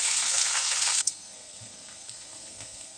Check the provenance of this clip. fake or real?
fake